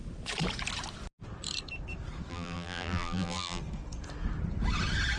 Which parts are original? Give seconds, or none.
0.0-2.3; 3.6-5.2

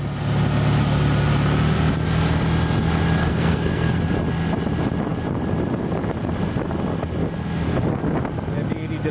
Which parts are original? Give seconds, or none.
0.0-3.2; 4.0-9.1

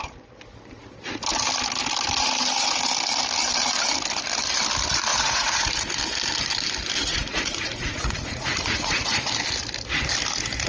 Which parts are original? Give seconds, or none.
0.0-5.1; 5.7-7.0; 9.3-10.7

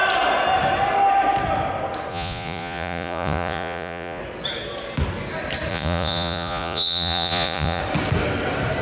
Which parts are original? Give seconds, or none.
0.0-2.1; 4.2-5.7; 7.8-8.8

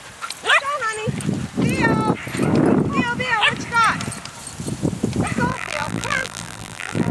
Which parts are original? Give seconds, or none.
0.0-5.5

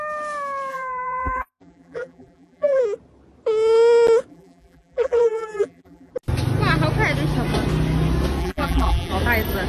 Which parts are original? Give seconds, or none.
0.0-0.7; 2.8-4.3; 6.1-8.4; 9.1-9.7